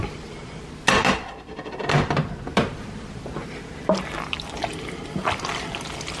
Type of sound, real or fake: real